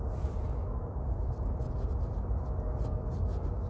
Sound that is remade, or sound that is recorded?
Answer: recorded